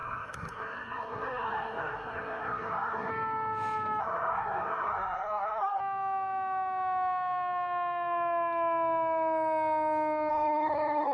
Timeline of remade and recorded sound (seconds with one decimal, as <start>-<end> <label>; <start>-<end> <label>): 0.0-3.1 remade; 3.1-4.0 recorded; 4.0-5.8 remade; 5.8-10.3 recorded; 10.3-11.1 remade